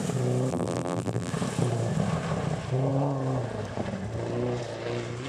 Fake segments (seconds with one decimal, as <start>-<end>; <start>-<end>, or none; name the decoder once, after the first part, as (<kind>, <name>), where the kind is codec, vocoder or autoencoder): 0.5-1.3 (vocoder, BigVGAN v2)

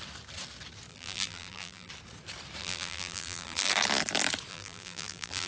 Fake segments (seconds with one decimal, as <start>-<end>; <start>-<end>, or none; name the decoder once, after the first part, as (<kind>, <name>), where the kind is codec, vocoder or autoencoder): 0.9-1.9 (vocoder, BigVGAN v2); 2.6-3.7; 4.5-5.5

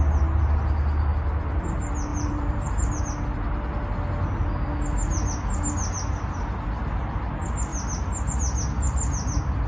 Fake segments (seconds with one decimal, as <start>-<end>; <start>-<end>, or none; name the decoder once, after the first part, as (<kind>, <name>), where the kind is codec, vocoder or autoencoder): 2.1-3.0 (vocoder, BigVGAN v2)

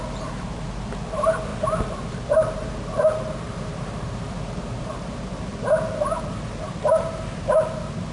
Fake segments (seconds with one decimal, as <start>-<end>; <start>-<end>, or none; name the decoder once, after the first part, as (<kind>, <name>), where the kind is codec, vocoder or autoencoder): 0.0-5.5 (vocoder, BigVGAN v2); 6.2-8.1

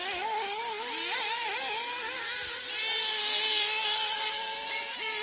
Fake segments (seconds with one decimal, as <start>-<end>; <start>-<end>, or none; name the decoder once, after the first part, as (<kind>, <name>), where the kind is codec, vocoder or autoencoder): none

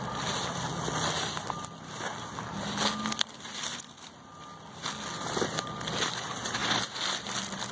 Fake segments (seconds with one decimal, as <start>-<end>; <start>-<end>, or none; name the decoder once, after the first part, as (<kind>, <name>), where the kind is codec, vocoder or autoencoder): none